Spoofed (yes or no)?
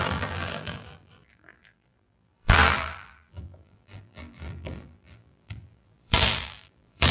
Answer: yes